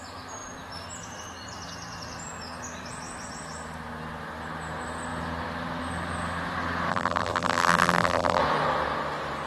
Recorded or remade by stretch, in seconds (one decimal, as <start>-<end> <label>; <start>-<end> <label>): 0.0-6.9 recorded; 6.9-8.4 remade; 8.4-9.5 recorded